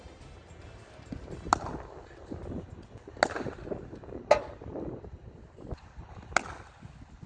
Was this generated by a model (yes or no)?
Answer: no